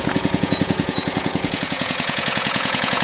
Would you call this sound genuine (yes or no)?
no